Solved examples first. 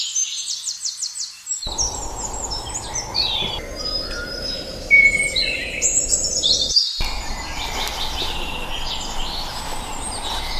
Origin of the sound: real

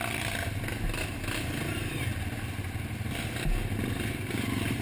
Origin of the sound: real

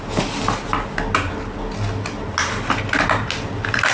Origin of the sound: real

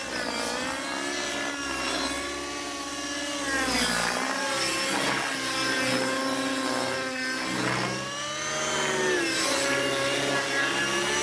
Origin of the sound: real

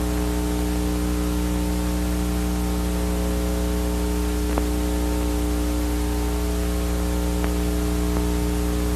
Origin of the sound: real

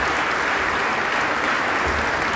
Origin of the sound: real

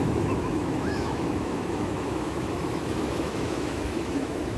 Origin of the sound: fake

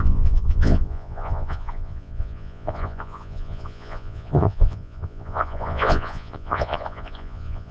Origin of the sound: fake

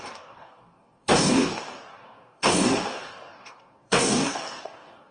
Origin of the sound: fake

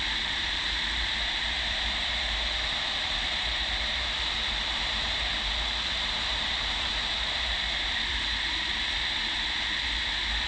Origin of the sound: fake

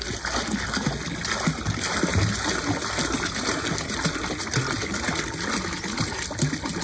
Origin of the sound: real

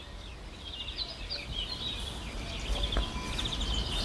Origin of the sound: real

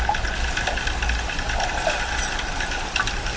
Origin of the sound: real